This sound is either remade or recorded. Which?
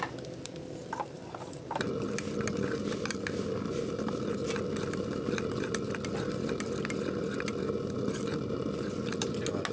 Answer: recorded